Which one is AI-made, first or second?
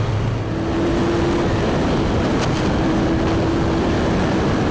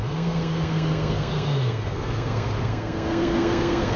second